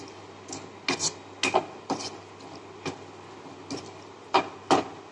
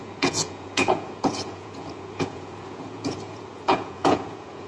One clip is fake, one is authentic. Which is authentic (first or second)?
first